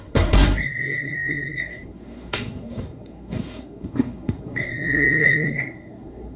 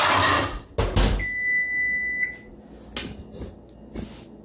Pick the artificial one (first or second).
first